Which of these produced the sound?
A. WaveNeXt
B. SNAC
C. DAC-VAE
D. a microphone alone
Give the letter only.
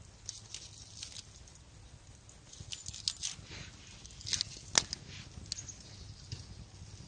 D